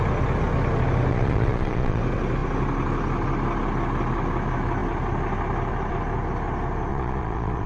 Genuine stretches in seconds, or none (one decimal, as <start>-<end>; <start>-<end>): 0.0-1.1; 2.0-6.9